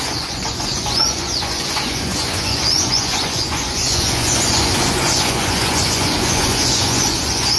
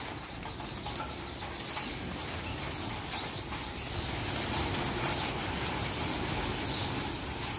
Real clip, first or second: second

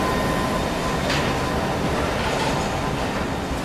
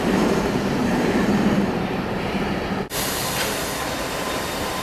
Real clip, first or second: first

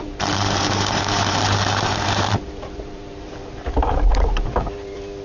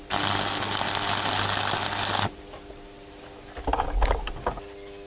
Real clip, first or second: second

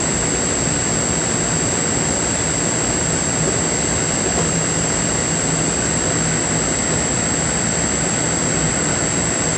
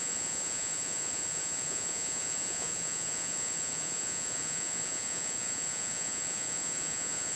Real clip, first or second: first